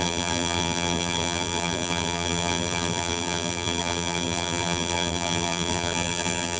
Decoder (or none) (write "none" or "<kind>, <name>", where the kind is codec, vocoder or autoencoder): vocoder, BigVGAN v2